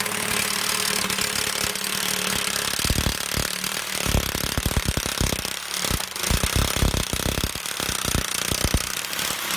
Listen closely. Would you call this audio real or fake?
real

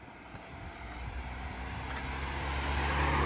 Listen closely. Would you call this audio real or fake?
real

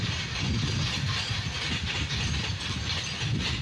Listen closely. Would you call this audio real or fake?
real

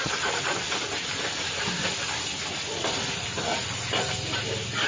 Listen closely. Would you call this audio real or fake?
real